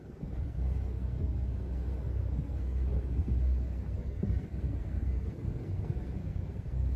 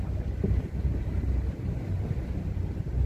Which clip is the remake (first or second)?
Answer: first